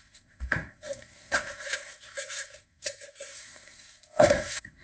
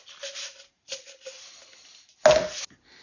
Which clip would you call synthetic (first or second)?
first